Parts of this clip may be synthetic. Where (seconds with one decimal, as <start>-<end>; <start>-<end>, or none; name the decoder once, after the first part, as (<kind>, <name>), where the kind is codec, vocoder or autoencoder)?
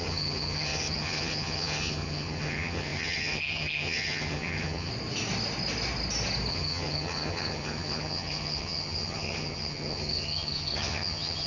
0.0-4.9 (vocoder, HiFi-GAN); 6.5-11.5